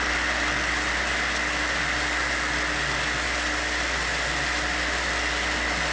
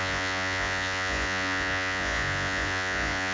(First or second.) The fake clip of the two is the second